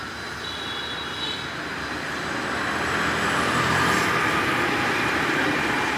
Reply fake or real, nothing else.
real